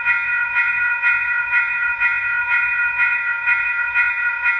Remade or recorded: remade